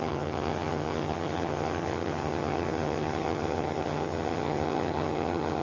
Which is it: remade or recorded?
remade